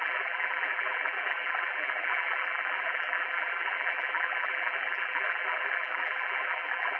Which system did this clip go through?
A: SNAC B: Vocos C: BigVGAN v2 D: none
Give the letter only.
C